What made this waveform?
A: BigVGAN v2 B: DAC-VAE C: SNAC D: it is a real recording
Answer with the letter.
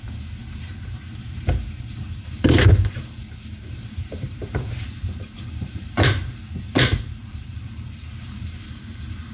A